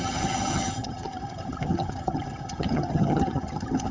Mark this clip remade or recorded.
remade